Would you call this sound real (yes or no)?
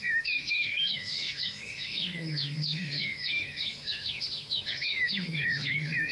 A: no